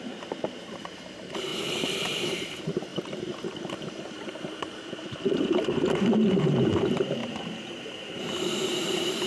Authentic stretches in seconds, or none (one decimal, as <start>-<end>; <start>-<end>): 1.5-2.2